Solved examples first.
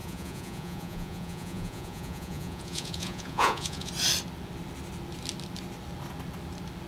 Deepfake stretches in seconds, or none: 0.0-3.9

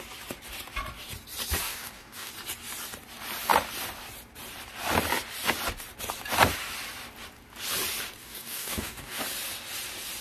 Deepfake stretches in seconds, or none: 1.6-2.3; 8.2-9.2

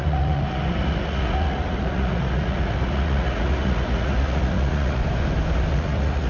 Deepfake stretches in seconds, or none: 0.0-5.0; 5.7-6.3